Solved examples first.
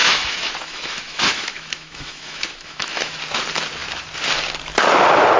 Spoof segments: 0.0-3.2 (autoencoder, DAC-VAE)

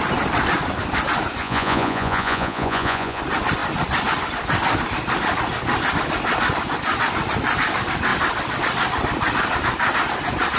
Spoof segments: 1.4-3.2 (vocoder, Vocos)

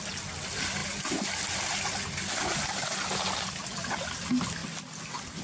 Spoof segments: none

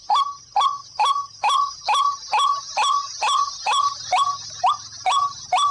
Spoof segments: none